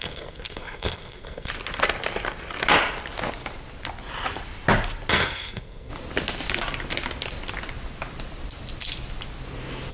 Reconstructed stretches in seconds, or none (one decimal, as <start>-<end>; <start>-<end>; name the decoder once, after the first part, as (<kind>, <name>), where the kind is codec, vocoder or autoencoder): 0.0-1.5 (codec, SNAC); 5.1-5.9